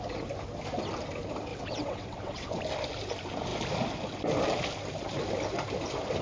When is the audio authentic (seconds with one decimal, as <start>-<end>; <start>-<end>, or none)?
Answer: 0.0-1.5; 2.6-6.2